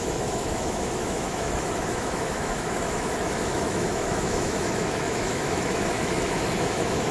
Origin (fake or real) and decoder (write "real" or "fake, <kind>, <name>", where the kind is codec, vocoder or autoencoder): fake, autoencoder, DAC-VAE